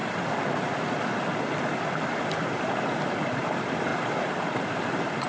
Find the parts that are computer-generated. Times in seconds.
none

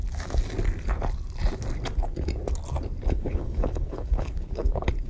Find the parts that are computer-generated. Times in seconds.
3.1-5.1 (codec, HILCodec)

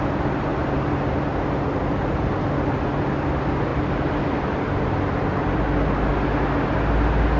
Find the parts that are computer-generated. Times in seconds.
none

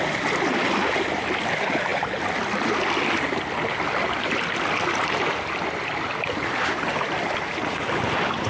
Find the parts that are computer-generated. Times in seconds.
none

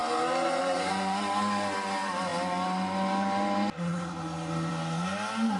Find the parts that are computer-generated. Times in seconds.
none

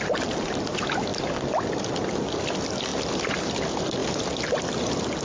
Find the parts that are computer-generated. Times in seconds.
none

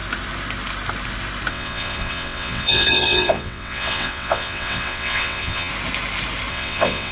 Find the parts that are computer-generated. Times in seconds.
1.5-5.7 (vocoder, WaveNeXt); 6.5-7.1

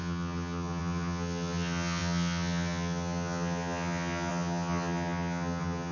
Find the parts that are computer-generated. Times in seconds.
0.0-5.9 (vocoder, HiFi-GAN)